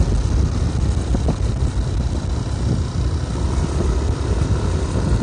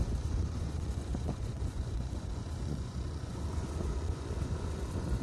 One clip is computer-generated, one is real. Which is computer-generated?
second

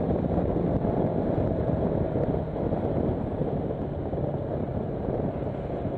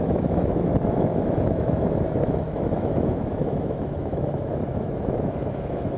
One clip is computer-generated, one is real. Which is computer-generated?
second